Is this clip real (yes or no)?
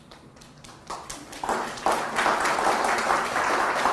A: yes